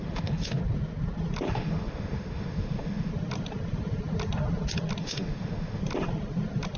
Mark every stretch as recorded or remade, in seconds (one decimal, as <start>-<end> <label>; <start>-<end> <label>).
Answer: 0.0-0.6 remade; 0.6-1.5 recorded; 1.5-3.1 remade; 3.1-5.0 recorded; 5.0-5.8 remade; 5.8-6.8 recorded